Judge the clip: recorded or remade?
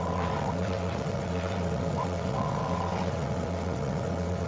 remade